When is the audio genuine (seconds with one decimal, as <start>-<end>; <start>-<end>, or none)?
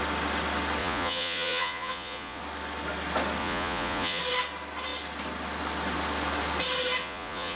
0.0-0.8; 2.4-3.4; 4.2-7.0